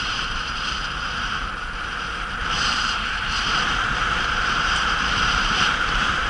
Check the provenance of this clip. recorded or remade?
remade